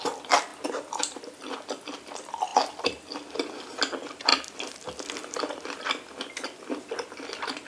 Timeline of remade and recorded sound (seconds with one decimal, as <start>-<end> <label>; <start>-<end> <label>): 0.0-2.5 recorded; 2.5-3.5 remade; 3.5-4.3 recorded; 4.3-5.8 remade; 5.8-7.7 recorded